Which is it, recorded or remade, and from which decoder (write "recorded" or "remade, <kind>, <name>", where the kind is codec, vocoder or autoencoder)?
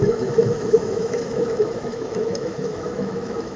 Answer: remade, autoencoder, DAC-VAE